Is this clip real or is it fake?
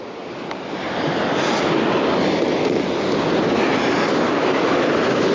real